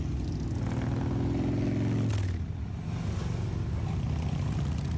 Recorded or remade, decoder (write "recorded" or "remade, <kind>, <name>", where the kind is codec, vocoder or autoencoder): recorded